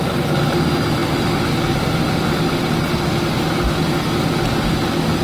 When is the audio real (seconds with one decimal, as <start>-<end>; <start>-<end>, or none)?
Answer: 0.0-5.2